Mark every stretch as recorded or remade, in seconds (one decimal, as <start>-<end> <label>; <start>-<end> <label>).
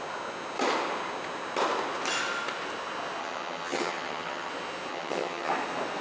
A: 0.0-3.2 recorded; 3.2-4.5 remade; 4.5-4.9 recorded; 4.9-5.5 remade; 5.5-6.0 recorded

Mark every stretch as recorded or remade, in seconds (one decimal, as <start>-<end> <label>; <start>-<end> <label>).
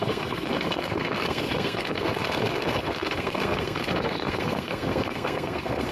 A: 0.0-5.9 remade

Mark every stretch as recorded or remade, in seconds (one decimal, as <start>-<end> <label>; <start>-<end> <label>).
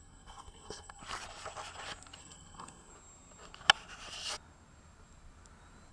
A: 0.0-1.0 remade; 1.0-2.2 recorded; 2.2-2.9 remade; 2.9-5.9 recorded